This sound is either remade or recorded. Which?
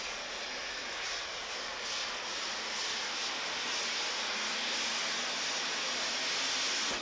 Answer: recorded